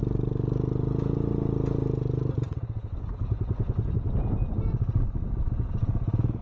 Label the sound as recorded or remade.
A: recorded